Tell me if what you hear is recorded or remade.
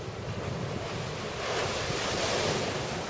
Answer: recorded